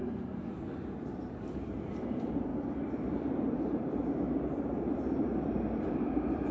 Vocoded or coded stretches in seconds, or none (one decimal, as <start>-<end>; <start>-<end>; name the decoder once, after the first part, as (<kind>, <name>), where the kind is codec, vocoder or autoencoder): 0.0-6.5 (vocoder, BigVGAN v2)